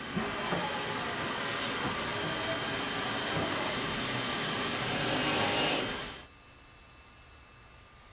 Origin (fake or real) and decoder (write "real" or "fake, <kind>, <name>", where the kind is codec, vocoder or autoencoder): real